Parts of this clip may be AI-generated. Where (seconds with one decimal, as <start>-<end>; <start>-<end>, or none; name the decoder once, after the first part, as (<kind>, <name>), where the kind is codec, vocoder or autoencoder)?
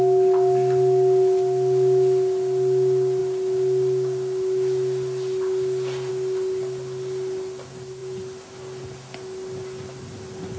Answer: none